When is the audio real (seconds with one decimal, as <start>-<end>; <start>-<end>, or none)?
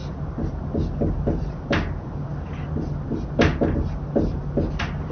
0.0-5.1